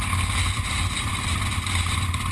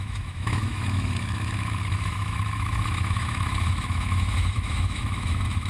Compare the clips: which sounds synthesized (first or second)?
second